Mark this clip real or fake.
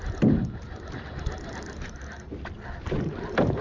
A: real